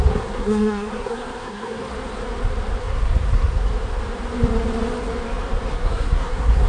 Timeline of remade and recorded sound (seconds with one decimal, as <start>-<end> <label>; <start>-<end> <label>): 0.0-1.8 remade; 1.8-2.8 recorded; 2.8-3.7 remade; 3.7-5.7 recorded; 5.7-6.7 remade